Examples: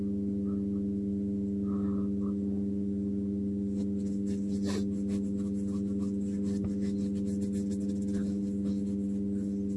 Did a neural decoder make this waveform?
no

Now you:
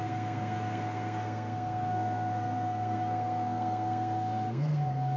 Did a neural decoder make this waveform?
yes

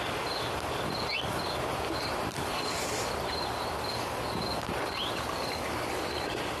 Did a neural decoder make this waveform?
no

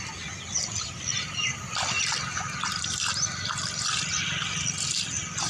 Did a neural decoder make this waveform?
no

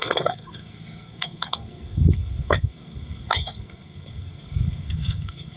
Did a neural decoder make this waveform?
yes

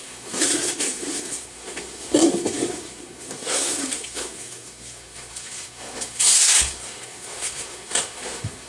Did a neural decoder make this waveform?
yes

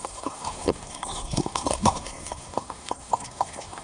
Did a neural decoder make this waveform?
yes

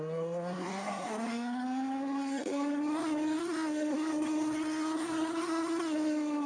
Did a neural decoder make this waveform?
yes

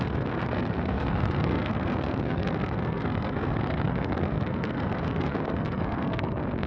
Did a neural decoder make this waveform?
yes